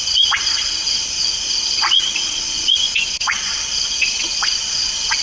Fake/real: fake